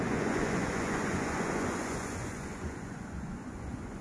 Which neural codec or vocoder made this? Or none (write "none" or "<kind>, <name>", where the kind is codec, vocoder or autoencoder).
vocoder, Vocos